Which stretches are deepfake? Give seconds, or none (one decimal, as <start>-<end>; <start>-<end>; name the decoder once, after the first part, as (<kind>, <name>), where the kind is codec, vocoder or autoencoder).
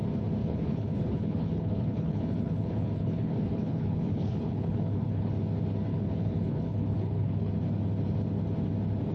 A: 0.4-5.3 (codec, HILCodec); 5.9-7.5